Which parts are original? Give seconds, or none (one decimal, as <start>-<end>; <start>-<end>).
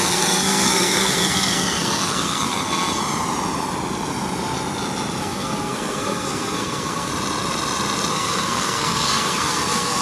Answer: 3.0-5.2; 7.1-8.1